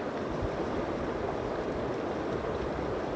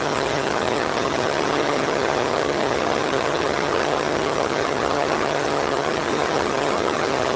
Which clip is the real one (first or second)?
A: first